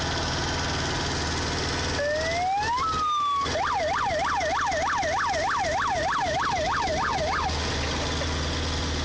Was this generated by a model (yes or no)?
no